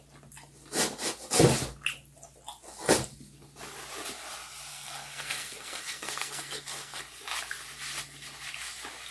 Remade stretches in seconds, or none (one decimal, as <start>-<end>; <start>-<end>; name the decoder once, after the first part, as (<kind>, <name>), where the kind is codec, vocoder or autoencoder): 4.7-7.0 (codec, SNAC)